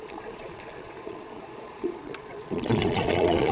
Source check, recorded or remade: remade